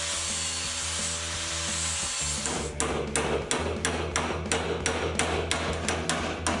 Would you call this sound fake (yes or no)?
no